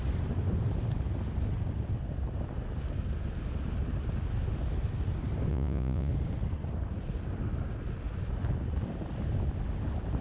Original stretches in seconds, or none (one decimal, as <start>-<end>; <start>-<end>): 0.0-5.5; 6.1-10.2

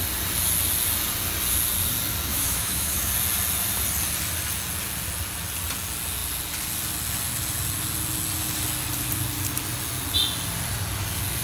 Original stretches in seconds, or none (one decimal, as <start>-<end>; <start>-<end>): 0.0-2.3; 3.1-11.4